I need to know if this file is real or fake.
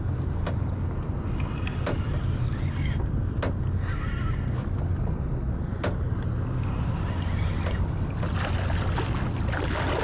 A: real